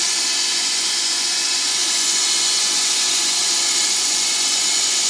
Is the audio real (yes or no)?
no